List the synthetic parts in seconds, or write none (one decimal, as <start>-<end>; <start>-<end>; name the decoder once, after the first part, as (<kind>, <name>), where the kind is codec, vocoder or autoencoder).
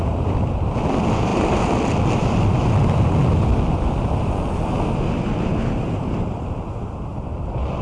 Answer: none